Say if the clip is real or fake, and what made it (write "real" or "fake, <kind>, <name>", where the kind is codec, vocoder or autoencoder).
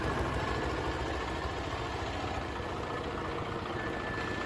real